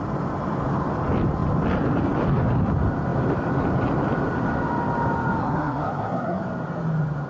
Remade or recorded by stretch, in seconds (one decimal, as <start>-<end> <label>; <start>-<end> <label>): 0.0-5.4 recorded; 5.4-6.4 remade; 6.4-7.3 recorded